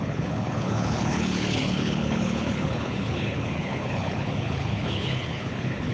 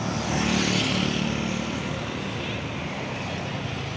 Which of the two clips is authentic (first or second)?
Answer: second